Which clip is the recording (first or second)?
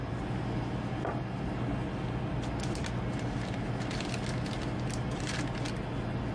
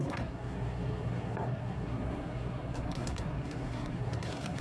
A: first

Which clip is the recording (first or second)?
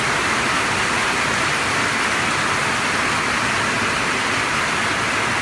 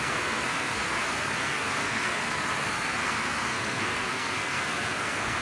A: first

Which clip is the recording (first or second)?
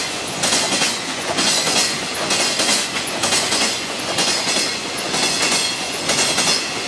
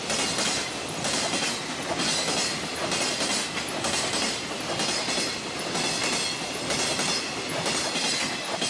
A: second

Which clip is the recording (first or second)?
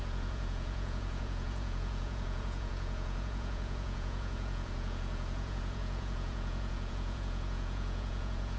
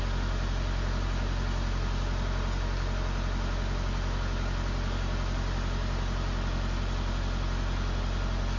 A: second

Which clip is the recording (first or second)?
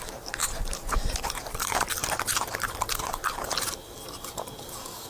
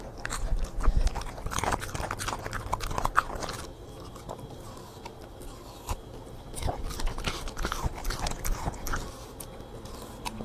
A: second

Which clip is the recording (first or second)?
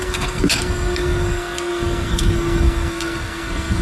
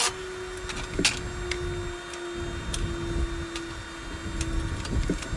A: second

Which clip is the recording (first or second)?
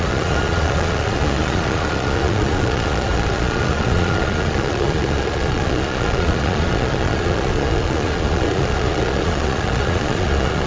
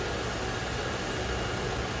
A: second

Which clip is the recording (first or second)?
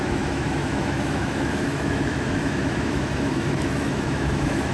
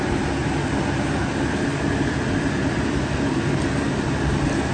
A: second